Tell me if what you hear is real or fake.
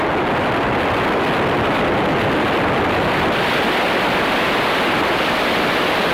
real